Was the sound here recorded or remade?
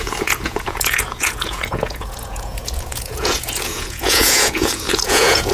remade